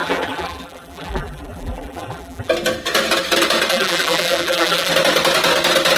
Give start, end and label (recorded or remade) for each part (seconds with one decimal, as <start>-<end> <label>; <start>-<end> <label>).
0.0-2.5 remade; 2.5-3.7 recorded; 3.7-4.9 remade; 4.9-6.0 recorded